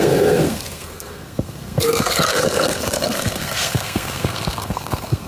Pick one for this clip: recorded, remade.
remade